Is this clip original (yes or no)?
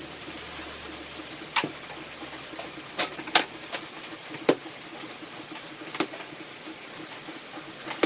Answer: yes